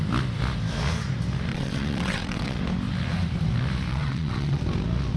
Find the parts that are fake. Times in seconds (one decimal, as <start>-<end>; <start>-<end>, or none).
1.5-2.6; 3.9-4.6